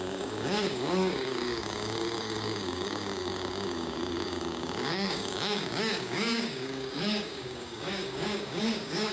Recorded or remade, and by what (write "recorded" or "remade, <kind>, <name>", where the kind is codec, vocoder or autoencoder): remade, codec, DAC